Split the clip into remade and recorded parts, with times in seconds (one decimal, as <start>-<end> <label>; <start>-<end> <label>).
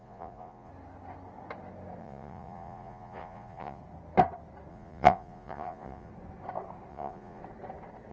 0.0-0.7 remade; 0.7-2.0 recorded; 2.0-3.8 remade; 3.8-4.7 recorded; 4.7-6.1 remade; 6.1-6.9 recorded; 6.9-7.4 remade; 7.4-8.1 recorded